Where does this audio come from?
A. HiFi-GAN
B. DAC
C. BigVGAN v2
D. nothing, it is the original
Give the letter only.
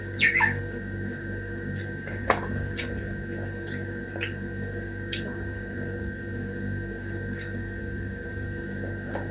B